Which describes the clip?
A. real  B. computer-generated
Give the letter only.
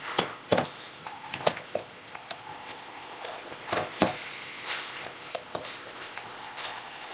B